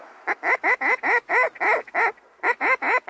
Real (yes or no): yes